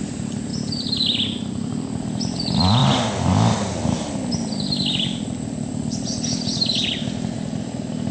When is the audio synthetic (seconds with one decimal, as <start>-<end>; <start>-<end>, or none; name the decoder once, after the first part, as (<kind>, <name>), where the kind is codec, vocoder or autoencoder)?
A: none